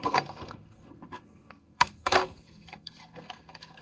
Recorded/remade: remade